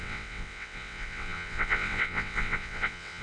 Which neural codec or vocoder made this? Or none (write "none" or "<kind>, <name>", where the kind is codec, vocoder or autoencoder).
vocoder, WaveNeXt